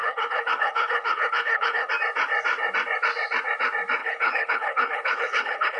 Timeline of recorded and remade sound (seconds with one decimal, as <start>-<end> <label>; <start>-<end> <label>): 0.0-1.9 remade; 1.9-4.0 recorded; 4.0-5.8 remade